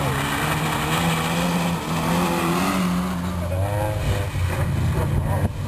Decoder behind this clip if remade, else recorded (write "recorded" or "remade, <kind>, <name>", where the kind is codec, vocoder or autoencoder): recorded